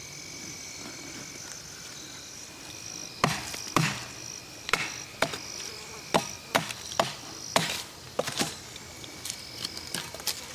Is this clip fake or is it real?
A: real